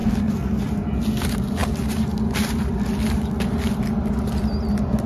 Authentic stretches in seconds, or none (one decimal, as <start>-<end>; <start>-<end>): 0.6-5.1

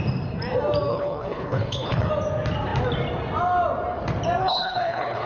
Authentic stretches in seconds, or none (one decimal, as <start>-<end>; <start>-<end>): 0.0-0.9; 2.1-4.4

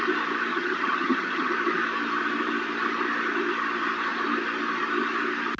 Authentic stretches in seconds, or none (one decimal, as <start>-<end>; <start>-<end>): 0.0-0.5; 1.5-5.6

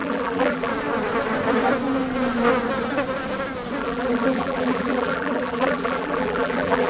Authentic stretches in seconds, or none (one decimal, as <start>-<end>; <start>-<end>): 0.7-3.8

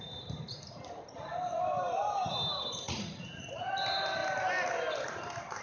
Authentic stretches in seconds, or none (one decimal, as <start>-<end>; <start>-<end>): 0.0-2.8; 3.7-5.6

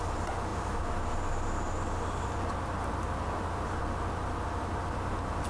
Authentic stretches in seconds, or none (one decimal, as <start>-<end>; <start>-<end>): 0.0-5.5